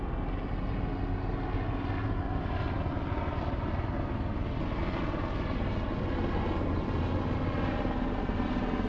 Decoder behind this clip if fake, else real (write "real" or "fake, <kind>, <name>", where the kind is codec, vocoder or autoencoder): real